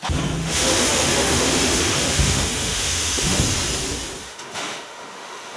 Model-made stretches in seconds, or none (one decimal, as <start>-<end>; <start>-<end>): 0.4-3.4; 4.2-5.6